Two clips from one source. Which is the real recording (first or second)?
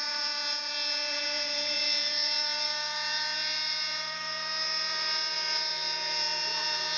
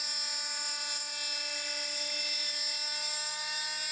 second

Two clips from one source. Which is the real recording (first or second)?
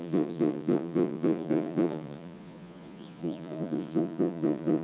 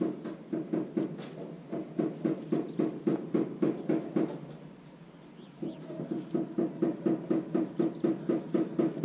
second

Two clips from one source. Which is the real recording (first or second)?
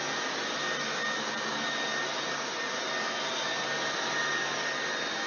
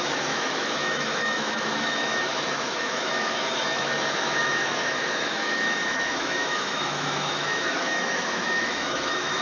first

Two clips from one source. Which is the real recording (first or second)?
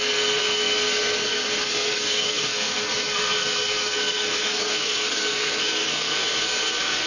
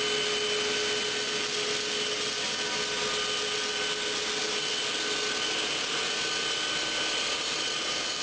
second